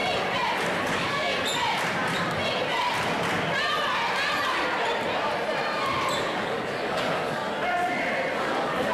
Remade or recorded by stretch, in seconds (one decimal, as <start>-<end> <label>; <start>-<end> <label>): 0.0-0.8 recorded; 0.8-1.3 remade; 1.3-6.2 recorded; 6.2-7.4 remade; 7.4-8.3 recorded; 8.3-8.9 remade